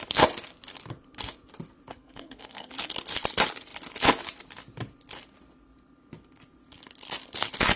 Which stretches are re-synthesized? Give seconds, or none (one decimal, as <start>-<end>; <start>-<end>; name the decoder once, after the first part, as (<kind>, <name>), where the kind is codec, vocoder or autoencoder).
1.9-2.7 (codec, SNAC)